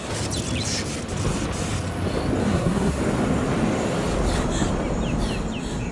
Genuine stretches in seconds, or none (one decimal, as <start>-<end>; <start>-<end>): 0.0-2.4; 3.0-5.9